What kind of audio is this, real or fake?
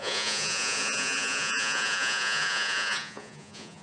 fake